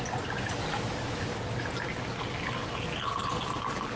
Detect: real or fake real